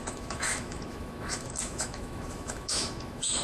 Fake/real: fake